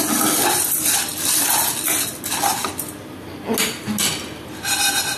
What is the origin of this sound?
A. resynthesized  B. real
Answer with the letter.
B